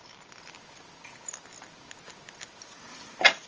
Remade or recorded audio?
recorded